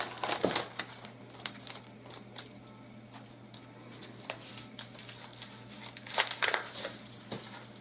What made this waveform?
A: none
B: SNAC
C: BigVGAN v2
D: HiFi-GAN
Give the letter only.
A